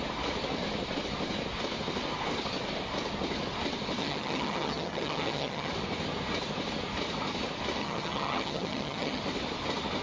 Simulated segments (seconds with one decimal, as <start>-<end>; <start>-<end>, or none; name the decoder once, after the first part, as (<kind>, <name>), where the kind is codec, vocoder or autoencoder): 4.0-5.7 (vocoder, HiFi-GAN); 7.8-9.2